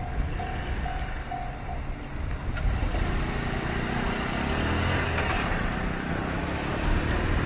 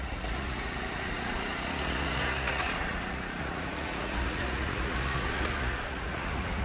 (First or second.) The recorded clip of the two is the first